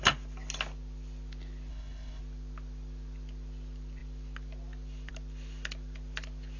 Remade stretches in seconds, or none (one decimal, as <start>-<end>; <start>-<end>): 1.7-2.2